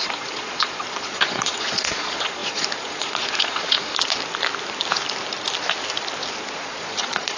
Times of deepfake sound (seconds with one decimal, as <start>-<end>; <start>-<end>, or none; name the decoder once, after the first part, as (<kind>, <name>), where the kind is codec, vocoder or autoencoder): 0.0-3.9 (vocoder, Vocos); 6.6-7.4